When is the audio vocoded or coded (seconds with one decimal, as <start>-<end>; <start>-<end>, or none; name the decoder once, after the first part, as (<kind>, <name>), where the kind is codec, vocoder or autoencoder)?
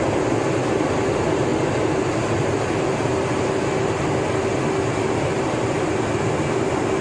none